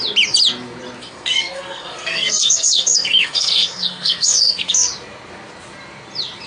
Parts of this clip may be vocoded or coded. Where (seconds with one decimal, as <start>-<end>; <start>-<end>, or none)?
1.0-4.9